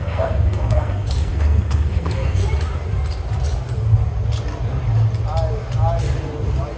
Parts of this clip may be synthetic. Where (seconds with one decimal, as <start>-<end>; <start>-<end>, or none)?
0.0-2.4